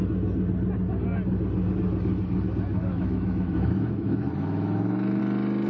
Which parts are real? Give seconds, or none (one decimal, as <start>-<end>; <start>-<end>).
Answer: 0.0-2.7; 5.2-5.7